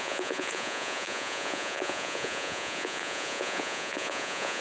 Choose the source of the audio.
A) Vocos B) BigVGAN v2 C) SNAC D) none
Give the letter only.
A